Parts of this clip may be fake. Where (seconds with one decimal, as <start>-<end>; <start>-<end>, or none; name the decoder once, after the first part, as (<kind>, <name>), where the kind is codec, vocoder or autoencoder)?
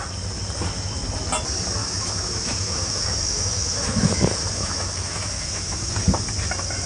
1.8-5.9 (autoencoder, DAC-VAE)